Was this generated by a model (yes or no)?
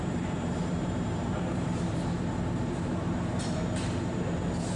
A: yes